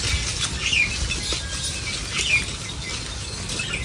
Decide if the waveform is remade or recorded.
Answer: recorded